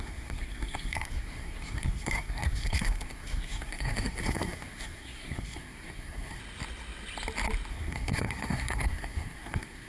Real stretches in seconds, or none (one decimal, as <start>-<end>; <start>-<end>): 6.4-7.7